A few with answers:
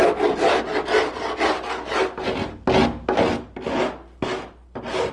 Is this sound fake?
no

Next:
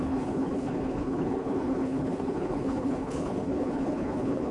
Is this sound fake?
yes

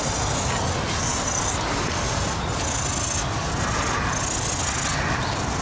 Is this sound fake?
no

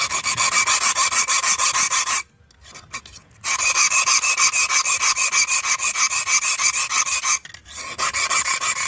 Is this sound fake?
no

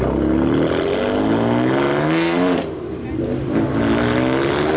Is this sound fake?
no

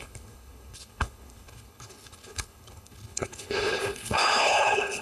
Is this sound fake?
yes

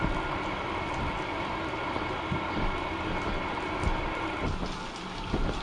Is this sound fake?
no